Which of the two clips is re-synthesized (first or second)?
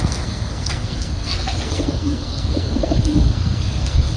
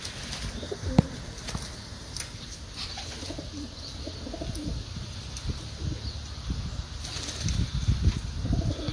first